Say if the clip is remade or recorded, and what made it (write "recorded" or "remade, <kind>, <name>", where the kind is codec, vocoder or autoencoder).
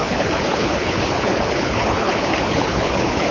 remade, codec, HILCodec